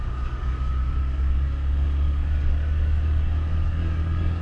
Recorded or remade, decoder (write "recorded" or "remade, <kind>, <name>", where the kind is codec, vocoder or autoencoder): remade, codec, DAC